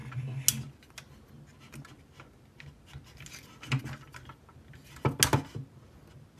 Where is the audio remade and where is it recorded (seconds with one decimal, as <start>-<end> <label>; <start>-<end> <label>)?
0.0-6.4 recorded